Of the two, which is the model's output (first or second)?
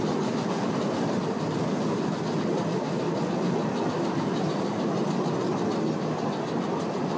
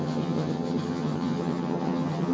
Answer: second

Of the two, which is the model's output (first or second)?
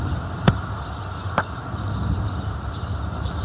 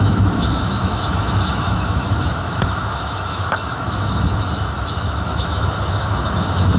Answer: second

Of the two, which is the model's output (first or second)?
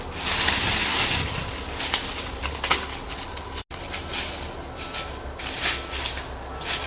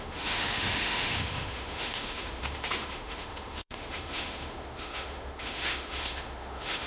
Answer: second